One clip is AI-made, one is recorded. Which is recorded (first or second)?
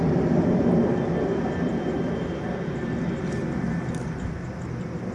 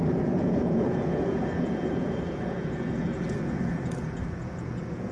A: first